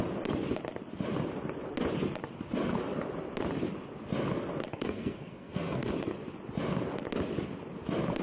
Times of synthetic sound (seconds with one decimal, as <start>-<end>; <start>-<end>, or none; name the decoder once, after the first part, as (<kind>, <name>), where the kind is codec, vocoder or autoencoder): 4.7-5.9 (codec, SNAC)